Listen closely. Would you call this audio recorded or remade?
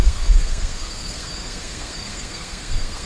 remade